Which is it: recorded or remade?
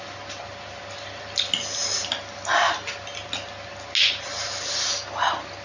recorded